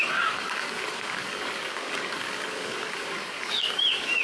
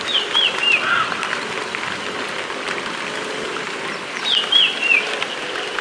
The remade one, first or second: first